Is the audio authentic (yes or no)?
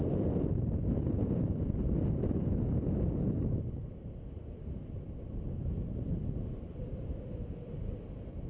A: yes